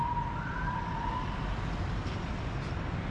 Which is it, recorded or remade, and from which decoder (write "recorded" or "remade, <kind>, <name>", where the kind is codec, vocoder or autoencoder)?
recorded